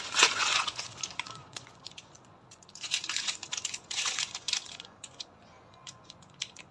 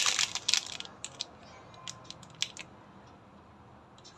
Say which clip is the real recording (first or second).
second